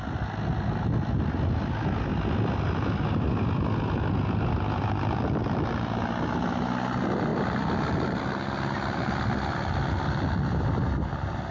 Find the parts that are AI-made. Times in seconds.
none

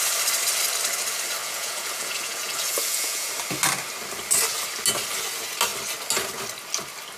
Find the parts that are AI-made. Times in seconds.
1.4-3.3 (vocoder, Vocos)

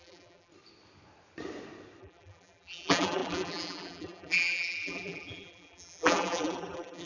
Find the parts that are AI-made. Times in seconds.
0.0-0.5 (vocoder, BigVGAN v2); 2.0-7.1